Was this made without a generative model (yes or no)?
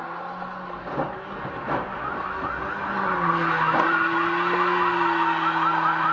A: yes